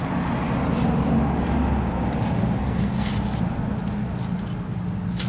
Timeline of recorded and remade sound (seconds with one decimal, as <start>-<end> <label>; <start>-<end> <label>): 0.0-2.6 recorded; 2.6-3.1 remade; 3.1-5.3 recorded